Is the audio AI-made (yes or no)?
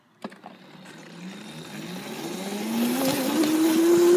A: no